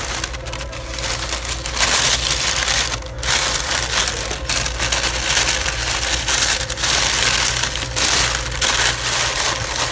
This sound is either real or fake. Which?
real